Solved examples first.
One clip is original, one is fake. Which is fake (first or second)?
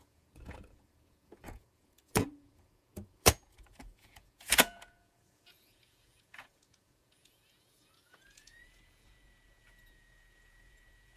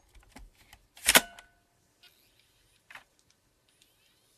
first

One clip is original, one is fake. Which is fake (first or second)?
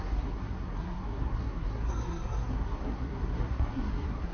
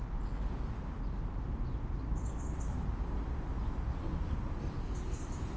first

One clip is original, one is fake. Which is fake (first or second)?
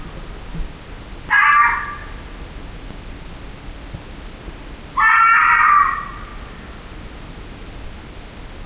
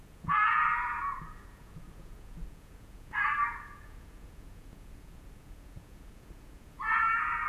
second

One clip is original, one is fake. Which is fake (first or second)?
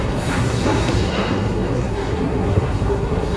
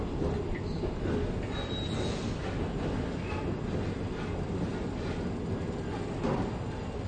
first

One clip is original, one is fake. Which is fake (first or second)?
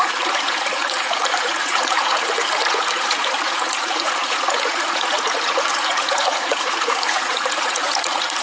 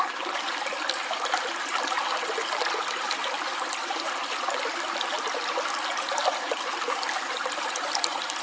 first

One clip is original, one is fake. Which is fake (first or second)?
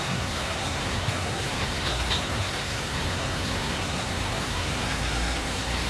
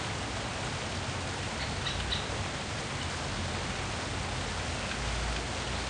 first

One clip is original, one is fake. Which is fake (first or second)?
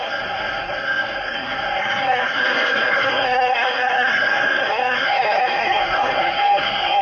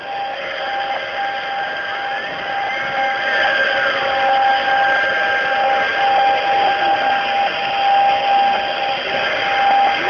first